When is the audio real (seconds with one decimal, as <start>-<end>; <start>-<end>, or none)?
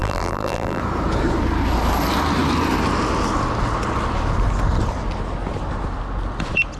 0.8-6.8